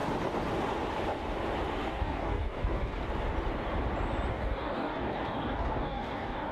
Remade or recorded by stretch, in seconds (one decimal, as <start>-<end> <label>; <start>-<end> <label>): 0.0-1.9 recorded; 1.9-3.0 remade; 3.0-4.3 recorded; 4.3-6.5 remade